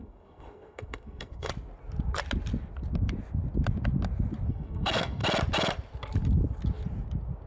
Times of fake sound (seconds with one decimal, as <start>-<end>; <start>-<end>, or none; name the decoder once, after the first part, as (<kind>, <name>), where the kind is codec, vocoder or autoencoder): 0.0-1.5 (codec, SNAC); 4.5-5.2